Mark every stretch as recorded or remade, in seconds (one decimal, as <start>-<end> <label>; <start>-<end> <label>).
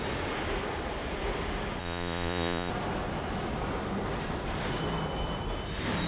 0.0-1.8 recorded; 1.8-2.7 remade; 2.7-6.1 recorded